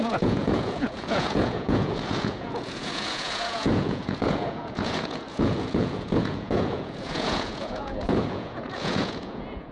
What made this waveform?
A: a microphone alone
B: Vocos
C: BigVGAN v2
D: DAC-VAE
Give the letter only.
B